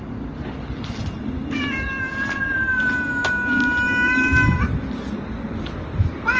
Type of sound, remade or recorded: recorded